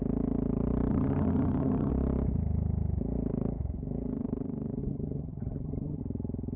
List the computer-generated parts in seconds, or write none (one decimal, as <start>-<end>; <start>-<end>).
0.9-1.9; 4.8-6.0